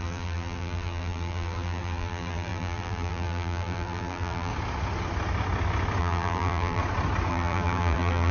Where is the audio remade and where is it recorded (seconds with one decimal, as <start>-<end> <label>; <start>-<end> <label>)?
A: 0.0-4.5 remade; 4.5-6.0 recorded; 6.0-6.8 remade; 6.8-7.3 recorded; 7.3-8.3 remade